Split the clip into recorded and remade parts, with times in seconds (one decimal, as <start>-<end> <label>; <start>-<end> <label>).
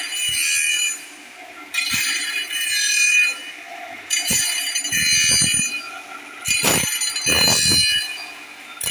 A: 0.0-1.2 recorded; 1.2-1.9 remade; 1.9-3.7 recorded; 3.7-5.0 remade; 5.0-8.9 recorded